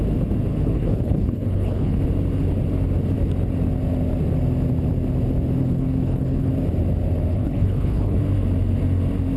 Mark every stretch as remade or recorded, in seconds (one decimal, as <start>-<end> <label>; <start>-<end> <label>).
0.0-0.5 recorded; 0.5-2.0 remade; 2.0-5.6 recorded; 5.6-6.5 remade; 6.5-7.3 recorded; 7.3-8.2 remade; 8.2-9.4 recorded